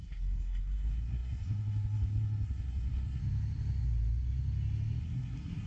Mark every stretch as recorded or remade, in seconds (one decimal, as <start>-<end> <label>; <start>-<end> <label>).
0.0-3.2 remade; 3.2-5.0 recorded; 5.0-5.7 remade